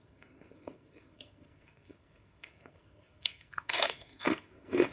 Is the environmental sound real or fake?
fake